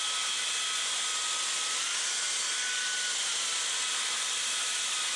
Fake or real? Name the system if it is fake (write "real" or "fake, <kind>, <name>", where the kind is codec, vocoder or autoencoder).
real